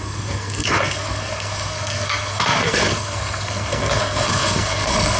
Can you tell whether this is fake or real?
fake